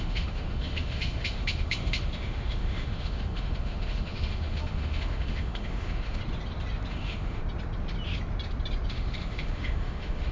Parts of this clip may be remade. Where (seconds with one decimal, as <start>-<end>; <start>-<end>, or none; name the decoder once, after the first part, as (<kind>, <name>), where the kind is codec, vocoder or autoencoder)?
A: 0.0-6.2 (autoencoder, DAC-VAE); 6.9-7.4; 8.9-10.3